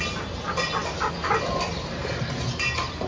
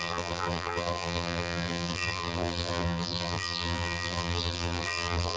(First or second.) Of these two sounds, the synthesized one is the second